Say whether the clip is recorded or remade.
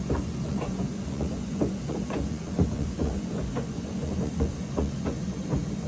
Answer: remade